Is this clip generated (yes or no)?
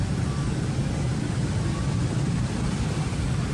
no